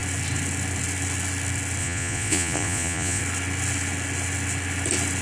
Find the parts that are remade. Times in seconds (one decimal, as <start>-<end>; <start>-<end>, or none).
1.8-3.2